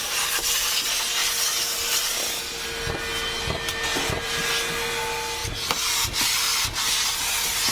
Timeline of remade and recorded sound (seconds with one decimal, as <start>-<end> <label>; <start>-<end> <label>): 0.0-3.9 recorded; 3.9-4.5 remade; 4.5-7.7 recorded